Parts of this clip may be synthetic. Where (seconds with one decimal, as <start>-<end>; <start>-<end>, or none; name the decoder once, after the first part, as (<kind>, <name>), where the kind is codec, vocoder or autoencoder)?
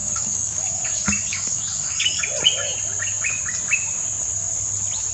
0.0-2.2 (codec, DAC)